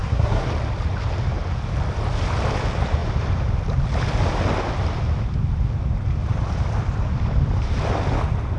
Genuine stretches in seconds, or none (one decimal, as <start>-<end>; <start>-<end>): 0.5-8.6